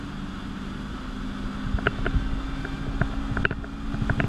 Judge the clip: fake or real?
real